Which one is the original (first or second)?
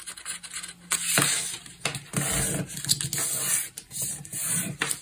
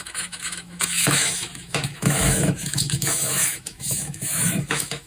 first